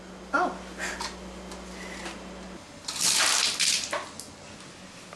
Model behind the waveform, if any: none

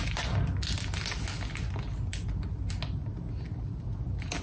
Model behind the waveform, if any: none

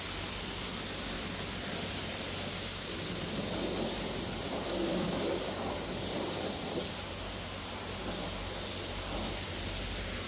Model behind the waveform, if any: none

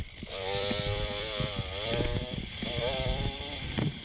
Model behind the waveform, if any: vocoder, BigVGAN v2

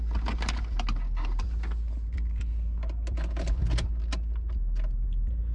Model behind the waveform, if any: none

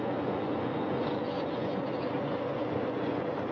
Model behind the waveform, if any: vocoder, Vocos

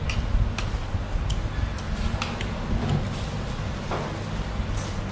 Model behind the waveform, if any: none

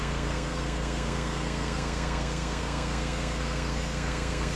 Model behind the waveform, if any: codec, SNAC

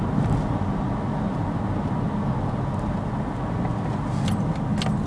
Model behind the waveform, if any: none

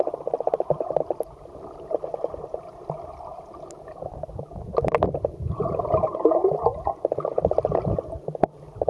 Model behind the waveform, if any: none